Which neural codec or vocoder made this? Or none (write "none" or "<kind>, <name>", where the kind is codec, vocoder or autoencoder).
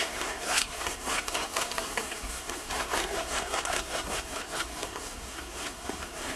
codec, SNAC